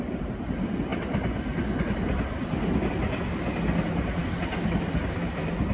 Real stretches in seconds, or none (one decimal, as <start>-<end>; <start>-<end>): 0.0-5.7